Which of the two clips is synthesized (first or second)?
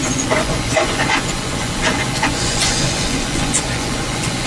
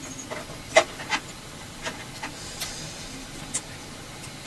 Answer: first